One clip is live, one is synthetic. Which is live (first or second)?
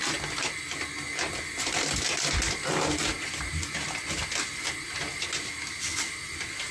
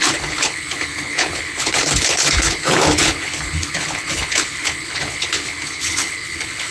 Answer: first